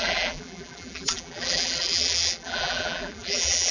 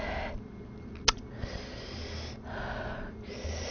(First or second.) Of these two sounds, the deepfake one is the first